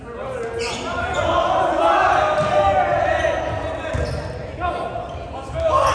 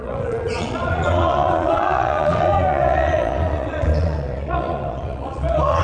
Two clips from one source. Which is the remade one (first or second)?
second